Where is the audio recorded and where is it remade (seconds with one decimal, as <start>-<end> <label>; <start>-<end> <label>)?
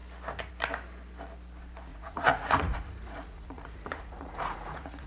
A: 0.0-1.9 recorded; 1.9-5.1 remade